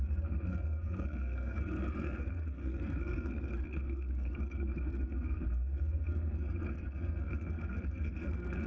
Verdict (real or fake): fake